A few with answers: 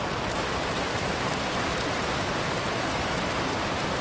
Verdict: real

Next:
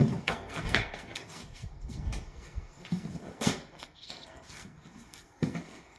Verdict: fake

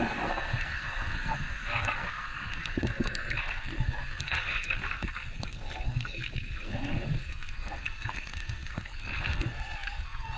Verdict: fake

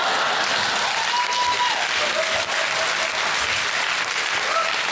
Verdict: real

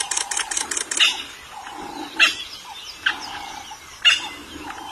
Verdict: real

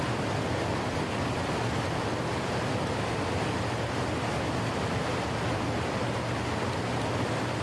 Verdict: real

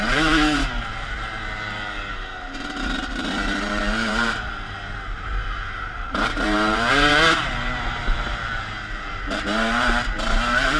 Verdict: fake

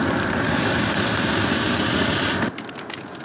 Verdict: real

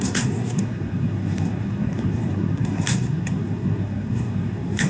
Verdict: fake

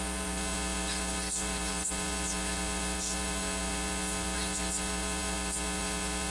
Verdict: fake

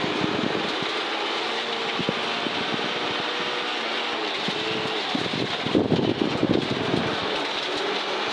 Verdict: real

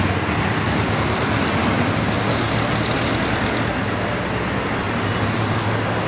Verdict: real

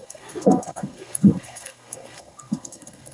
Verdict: fake